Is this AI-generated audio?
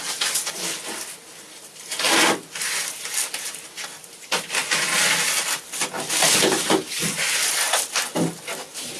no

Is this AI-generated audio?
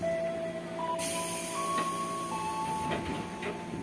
no